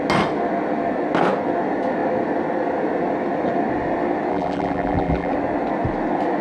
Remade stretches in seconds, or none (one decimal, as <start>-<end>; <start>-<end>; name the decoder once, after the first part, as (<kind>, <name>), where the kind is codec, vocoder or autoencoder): 4.3-5.3 (vocoder, BigVGAN v2)